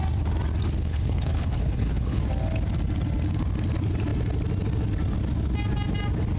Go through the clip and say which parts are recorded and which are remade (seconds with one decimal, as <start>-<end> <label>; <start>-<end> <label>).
0.0-0.8 recorded; 0.8-2.2 remade; 2.2-6.4 recorded